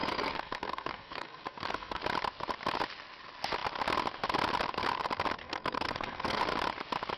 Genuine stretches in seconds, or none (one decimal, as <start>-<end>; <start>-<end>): 2.0-5.4; 6.4-7.2